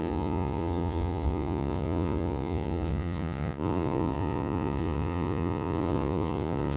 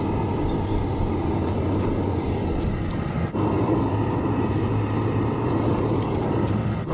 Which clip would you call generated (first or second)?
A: first